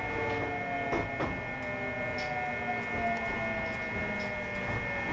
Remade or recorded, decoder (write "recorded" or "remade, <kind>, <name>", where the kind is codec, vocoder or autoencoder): recorded